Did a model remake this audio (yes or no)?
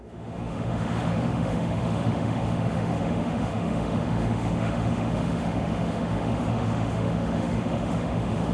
yes